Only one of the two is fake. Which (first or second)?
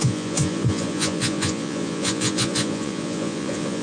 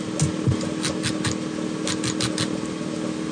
first